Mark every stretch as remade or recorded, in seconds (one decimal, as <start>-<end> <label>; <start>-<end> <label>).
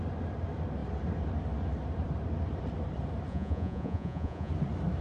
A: 0.0-3.3 recorded; 3.3-4.5 remade; 4.5-5.0 recorded